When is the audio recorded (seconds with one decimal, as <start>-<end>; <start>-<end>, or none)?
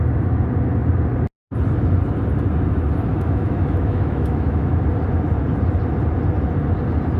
0.0-3.1; 4.7-7.2